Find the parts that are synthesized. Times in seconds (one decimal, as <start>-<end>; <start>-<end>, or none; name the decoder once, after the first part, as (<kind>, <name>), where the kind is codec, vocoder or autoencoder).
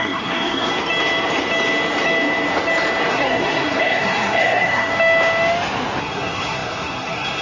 0.0-0.7 (codec, SNAC); 3.1-4.9; 6.0-7.4